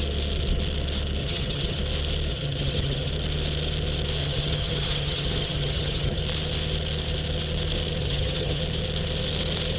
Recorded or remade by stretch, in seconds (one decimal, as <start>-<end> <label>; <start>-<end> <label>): 0.0-1.2 recorded; 1.2-1.8 remade; 1.8-2.3 recorded; 2.3-3.1 remade; 3.1-4.2 recorded; 4.2-6.2 remade; 6.2-8.0 recorded; 8.0-8.6 remade; 8.6-9.8 recorded